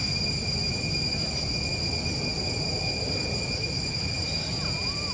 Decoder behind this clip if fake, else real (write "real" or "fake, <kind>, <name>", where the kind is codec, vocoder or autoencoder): real